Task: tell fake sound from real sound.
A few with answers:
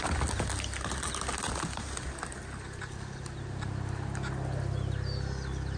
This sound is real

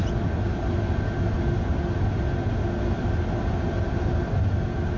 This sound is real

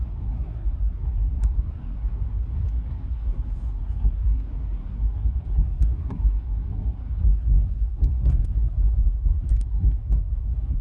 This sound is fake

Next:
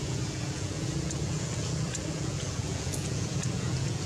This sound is fake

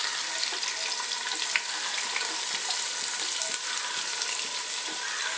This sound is real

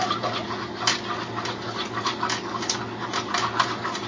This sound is real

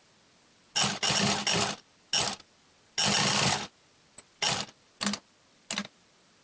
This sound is real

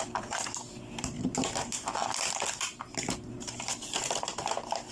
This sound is fake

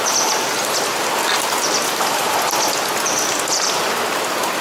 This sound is real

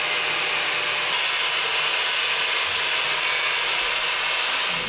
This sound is real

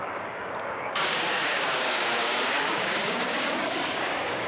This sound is fake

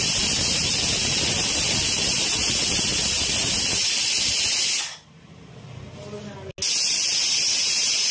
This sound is real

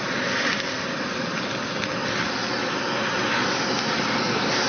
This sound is real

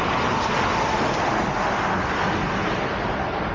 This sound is real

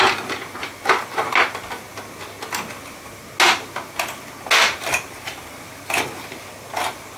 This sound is real